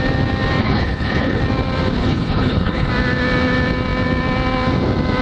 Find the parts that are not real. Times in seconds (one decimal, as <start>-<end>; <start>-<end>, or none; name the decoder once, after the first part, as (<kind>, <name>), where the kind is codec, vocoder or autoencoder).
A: 0.6-1.4 (codec, HILCodec); 2.0-2.9

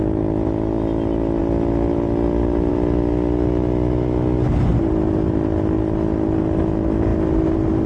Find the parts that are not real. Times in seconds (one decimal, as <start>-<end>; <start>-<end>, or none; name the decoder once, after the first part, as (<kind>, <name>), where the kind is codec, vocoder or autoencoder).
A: none

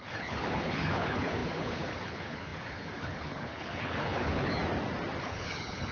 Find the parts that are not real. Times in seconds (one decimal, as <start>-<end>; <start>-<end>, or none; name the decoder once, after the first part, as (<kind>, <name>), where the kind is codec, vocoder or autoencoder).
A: 0.0-4.6 (codec, HILCodec); 5.2-5.9

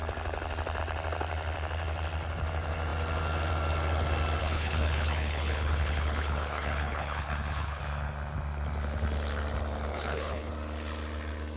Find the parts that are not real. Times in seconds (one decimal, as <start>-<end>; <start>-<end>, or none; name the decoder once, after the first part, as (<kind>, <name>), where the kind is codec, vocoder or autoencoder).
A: 4.4-7.8 (codec, HILCodec); 9.9-10.5